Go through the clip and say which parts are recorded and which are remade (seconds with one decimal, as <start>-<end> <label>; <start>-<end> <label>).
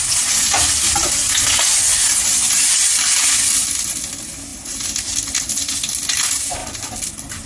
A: 0.0-2.9 recorded; 2.9-3.7 remade; 3.7-4.5 recorded; 4.5-5.7 remade; 5.7-6.6 recorded; 6.6-7.1 remade; 7.1-7.5 recorded